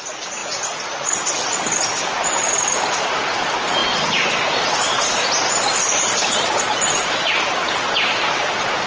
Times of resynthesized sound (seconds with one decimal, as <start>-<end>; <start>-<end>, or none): none